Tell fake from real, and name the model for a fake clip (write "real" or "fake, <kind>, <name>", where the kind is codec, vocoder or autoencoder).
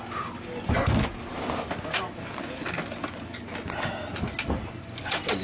real